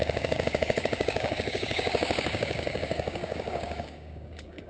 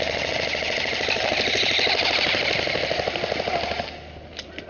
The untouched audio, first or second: second